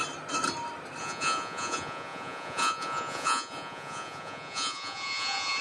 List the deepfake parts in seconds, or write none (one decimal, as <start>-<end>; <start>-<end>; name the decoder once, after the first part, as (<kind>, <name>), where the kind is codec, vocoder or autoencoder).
1.0-5.6 (vocoder, Vocos)

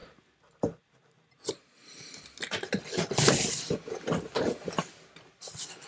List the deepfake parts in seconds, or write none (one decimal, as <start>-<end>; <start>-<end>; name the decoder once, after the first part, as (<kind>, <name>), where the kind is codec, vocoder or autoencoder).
none